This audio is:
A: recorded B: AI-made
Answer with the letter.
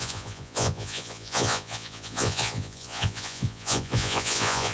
B